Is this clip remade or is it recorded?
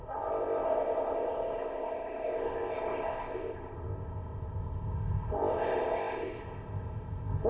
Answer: remade